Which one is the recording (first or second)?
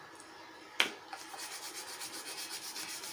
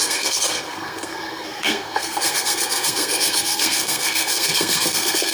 first